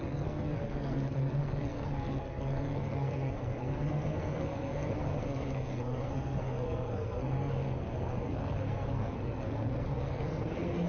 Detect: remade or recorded remade